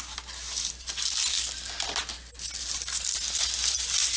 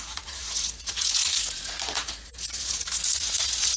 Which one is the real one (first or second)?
first